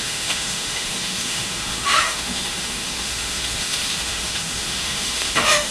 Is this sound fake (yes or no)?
yes